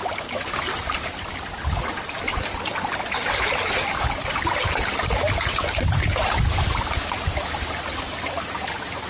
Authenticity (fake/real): real